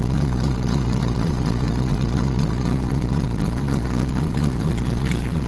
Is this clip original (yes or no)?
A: no